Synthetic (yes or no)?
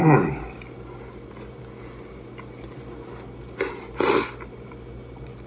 no